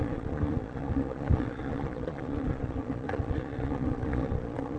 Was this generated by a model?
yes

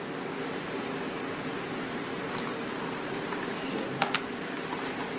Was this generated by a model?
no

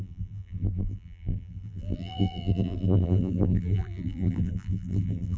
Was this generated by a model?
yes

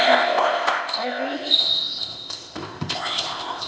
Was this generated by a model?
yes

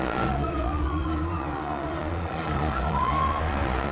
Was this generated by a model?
yes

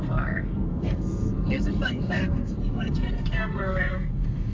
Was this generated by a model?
yes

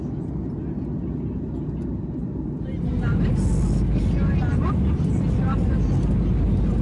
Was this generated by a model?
no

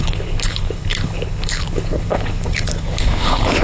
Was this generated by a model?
yes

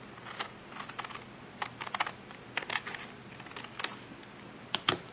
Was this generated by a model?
no